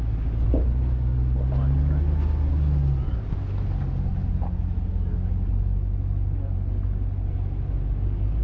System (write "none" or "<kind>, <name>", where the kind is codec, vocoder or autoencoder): none